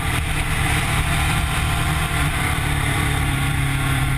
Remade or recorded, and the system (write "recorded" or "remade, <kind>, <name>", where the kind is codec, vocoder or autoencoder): remade, vocoder, BigVGAN v2